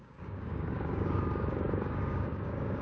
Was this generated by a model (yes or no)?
yes